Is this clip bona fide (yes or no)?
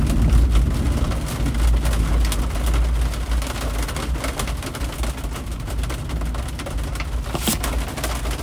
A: yes